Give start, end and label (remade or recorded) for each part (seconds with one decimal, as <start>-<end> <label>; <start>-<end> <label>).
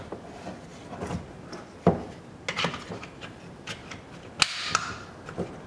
0.0-5.7 recorded